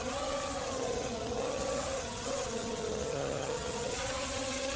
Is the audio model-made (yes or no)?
yes